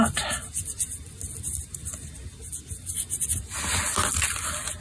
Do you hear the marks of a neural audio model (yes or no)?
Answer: no